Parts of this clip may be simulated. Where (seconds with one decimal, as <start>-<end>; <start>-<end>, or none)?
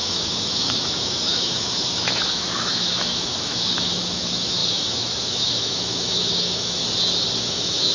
0.0-6.8; 7.4-7.9